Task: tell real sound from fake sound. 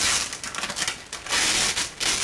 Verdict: real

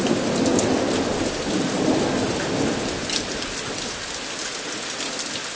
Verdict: real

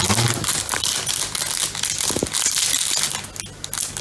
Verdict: real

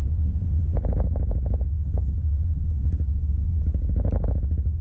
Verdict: real